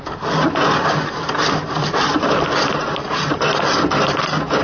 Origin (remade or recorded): recorded